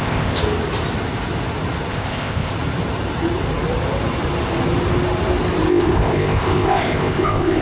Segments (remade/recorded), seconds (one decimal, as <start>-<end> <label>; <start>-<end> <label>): 0.0-0.4 remade; 0.4-1.9 recorded; 1.9-2.5 remade; 2.5-5.7 recorded; 5.7-7.6 remade